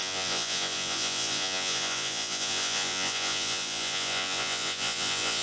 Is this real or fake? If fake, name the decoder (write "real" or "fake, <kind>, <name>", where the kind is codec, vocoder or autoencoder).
fake, vocoder, Vocos